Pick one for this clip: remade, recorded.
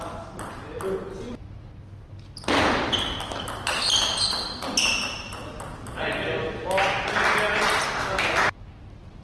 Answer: recorded